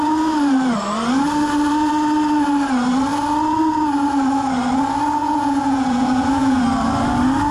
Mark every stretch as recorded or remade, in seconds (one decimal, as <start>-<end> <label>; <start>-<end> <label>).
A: 0.0-5.2 recorded; 5.2-6.6 remade; 6.6-7.5 recorded